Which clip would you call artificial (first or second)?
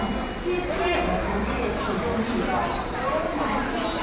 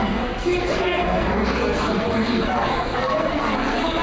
second